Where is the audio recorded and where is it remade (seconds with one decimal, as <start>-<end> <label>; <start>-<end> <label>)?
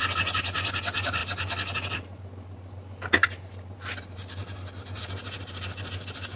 0.0-6.3 recorded